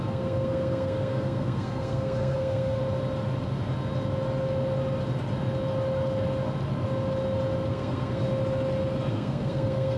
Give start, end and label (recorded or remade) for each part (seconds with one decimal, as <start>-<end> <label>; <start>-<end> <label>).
0.0-2.8 remade; 2.8-7.7 recorded; 7.7-8.2 remade; 8.2-9.1 recorded; 9.1-10.0 remade

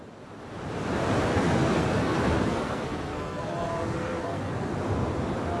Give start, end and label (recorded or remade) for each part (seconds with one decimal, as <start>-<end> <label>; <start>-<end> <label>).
0.0-1.3 recorded; 1.3-4.7 remade; 4.7-5.6 recorded

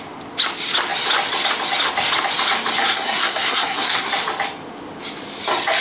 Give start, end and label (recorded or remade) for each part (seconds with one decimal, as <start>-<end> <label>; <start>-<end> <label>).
0.0-2.8 recorded; 2.8-4.1 remade; 4.1-5.8 recorded